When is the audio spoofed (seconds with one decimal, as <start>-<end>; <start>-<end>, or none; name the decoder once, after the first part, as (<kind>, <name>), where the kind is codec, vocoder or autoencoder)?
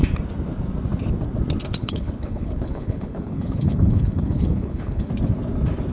1.8-5.1 (codec, HILCodec)